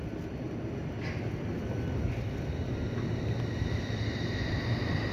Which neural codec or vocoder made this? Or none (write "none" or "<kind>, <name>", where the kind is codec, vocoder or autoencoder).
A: none